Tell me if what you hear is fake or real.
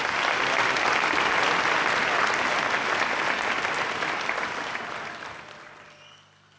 real